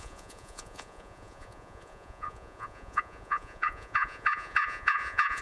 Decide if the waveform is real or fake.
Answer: fake